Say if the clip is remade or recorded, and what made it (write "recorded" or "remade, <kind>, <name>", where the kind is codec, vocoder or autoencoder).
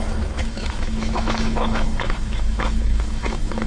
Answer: remade, autoencoder, DAC-VAE